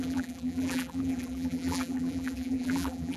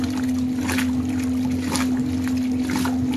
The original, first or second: second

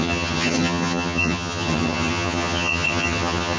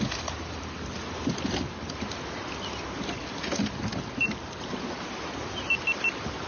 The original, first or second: second